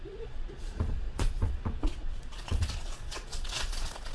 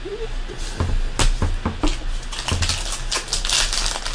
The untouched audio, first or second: second